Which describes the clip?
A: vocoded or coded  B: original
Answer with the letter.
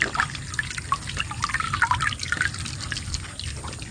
B